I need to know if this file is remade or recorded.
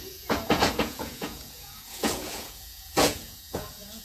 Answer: remade